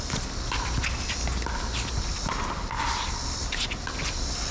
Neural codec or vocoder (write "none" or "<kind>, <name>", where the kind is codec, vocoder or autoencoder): none